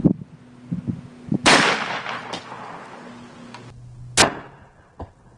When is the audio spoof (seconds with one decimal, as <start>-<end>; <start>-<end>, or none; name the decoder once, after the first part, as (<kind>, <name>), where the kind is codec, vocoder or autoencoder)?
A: none